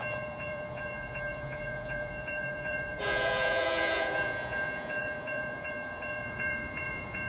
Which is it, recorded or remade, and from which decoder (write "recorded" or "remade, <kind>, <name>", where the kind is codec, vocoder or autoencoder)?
remade, vocoder, Vocos